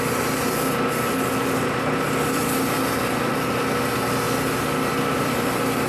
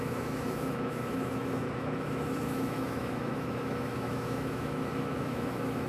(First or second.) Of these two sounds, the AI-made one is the second